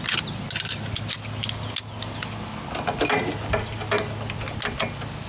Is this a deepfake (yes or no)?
no